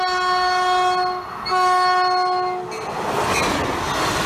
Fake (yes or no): no